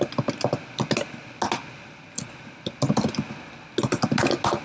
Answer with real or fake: real